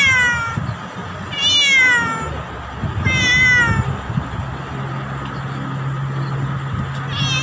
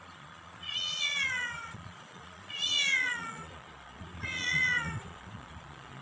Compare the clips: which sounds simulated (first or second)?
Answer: second